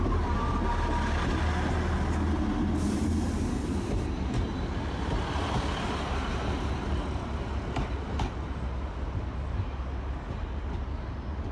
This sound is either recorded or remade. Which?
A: recorded